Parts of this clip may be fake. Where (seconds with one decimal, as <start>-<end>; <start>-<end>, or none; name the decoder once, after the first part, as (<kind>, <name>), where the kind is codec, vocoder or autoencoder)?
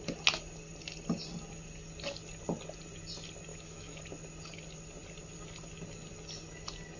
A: 3.5-4.0 (autoencoder, DAC-VAE)